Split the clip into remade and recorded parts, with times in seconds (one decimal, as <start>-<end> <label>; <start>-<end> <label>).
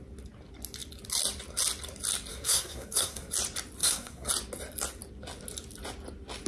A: 0.0-2.3 recorded; 2.3-3.3 remade; 3.3-3.8 recorded; 3.8-4.3 remade; 4.3-6.5 recorded